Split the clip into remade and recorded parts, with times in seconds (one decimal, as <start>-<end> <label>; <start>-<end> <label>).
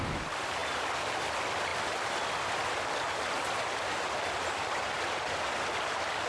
0.0-6.3 recorded